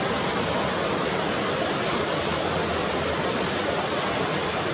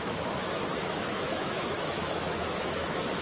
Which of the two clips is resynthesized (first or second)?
second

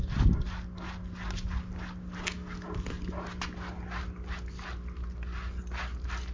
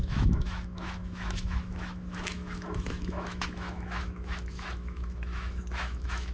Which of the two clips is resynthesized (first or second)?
second